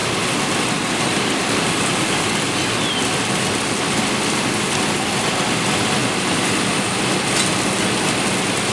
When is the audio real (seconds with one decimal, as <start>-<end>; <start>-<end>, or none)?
0.0-6.0; 6.7-8.7